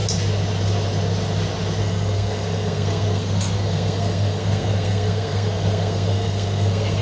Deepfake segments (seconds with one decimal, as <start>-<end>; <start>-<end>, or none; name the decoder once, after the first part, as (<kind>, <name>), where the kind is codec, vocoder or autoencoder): 1.8-7.0 (codec, SNAC)